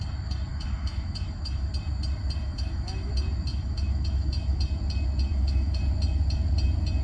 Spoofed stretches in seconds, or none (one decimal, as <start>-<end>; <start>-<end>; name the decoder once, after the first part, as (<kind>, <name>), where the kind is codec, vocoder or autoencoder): 0.5-1.7 (autoencoder, DAC-VAE); 2.4-3.1; 3.5-4.6; 5.3-5.8

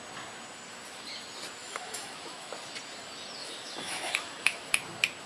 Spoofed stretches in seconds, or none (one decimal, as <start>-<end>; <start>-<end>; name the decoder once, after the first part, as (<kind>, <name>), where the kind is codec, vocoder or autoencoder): 1.6-2.7 (autoencoder, DAC-VAE); 3.4-4.7